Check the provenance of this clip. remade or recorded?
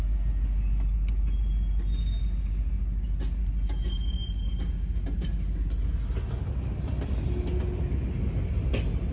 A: recorded